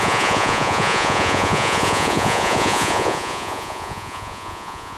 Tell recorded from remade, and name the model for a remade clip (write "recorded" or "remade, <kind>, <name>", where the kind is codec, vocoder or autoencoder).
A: remade, vocoder, Vocos